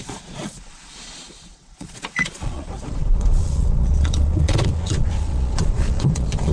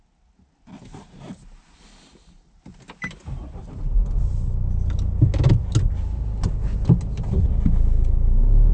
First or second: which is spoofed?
first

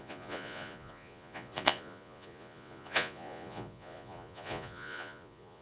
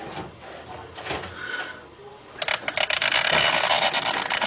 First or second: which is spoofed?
first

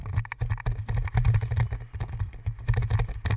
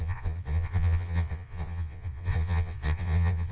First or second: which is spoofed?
second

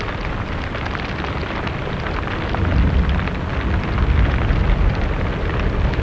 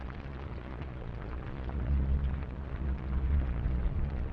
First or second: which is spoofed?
second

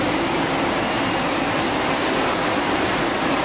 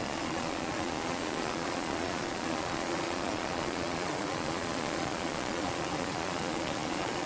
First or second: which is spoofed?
second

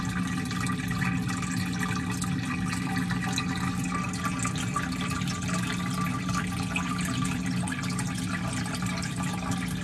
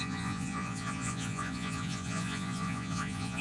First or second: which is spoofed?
second